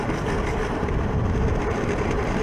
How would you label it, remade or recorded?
remade